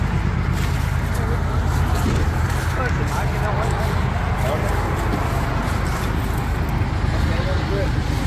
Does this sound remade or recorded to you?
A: recorded